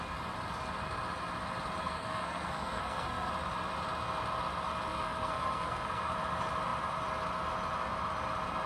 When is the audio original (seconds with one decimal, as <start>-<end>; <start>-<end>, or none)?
0.0-1.8; 3.3-4.9; 6.1-8.7